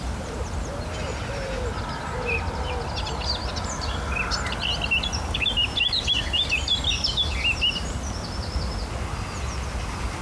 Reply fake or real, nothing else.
real